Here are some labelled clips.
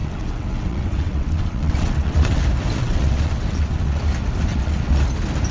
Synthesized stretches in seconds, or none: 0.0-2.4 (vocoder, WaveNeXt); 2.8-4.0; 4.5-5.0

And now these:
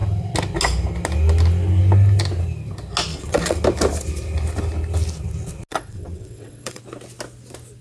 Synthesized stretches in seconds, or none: 3.1-3.6 (vocoder, WaveNeXt); 5.7-6.8

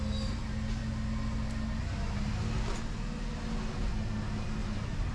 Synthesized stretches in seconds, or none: none

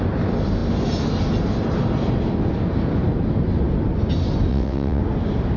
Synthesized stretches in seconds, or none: 4.5-5.0 (vocoder, WaveNeXt)

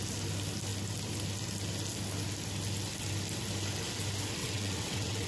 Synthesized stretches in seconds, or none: 4.4-5.3 (vocoder, WaveNeXt)

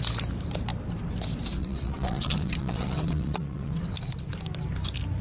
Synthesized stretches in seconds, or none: 1.6-3.8 (vocoder, WaveNeXt)